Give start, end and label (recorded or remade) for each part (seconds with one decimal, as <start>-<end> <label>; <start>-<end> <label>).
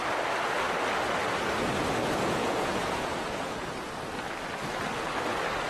0.0-2.0 recorded; 2.0-3.9 remade; 3.9-5.7 recorded